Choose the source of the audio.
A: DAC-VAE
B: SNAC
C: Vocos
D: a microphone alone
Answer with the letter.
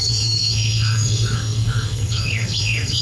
B